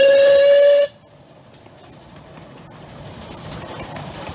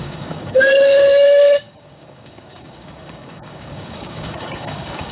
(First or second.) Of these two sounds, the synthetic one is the second